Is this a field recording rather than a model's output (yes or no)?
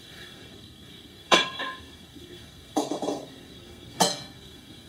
no